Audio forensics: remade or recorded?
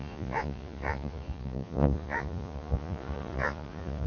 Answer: remade